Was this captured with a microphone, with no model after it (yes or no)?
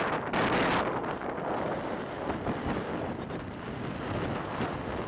yes